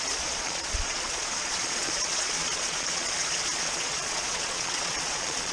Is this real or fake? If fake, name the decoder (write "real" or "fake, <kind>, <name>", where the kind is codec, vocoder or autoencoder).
fake, vocoder, Vocos